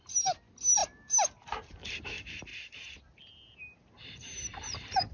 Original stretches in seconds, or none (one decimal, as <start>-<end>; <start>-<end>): 0.0-5.1